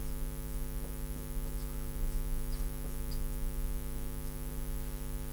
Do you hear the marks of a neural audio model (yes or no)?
no